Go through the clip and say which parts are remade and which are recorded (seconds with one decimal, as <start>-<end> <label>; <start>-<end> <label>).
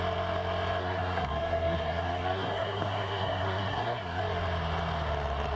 0.0-0.8 recorded; 0.8-4.2 remade; 4.2-5.6 recorded